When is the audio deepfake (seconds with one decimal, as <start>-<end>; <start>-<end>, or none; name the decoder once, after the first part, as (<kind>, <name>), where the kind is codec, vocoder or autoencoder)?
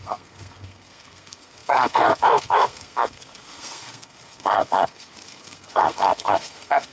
0.0-6.9 (codec, SNAC)